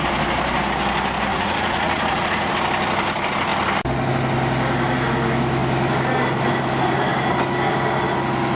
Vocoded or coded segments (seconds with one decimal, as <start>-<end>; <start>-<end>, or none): 1.3-2.5